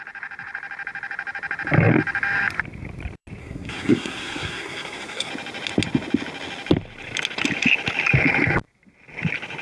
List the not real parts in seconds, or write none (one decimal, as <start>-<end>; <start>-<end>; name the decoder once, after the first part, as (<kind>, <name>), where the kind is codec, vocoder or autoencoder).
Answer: 3.4-5.3 (codec, SNAC)